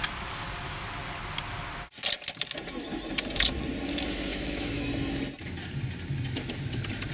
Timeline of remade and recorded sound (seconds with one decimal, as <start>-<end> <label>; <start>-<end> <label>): 0.0-4.3 recorded; 4.3-4.8 remade; 4.8-7.1 recorded